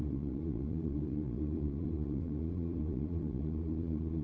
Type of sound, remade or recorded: remade